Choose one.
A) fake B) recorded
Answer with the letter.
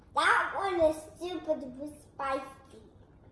B